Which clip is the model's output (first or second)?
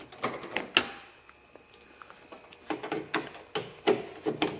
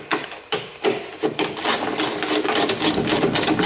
second